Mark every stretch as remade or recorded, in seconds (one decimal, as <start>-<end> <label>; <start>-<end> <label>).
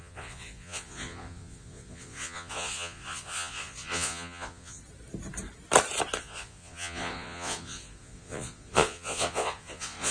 0.0-4.8 remade; 4.8-6.2 recorded; 6.2-10.1 remade